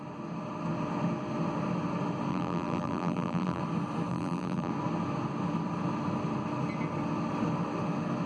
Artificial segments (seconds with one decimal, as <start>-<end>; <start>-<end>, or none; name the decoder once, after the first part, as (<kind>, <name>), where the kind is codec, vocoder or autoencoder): 2.3-3.6 (vocoder, BigVGAN v2); 4.1-4.7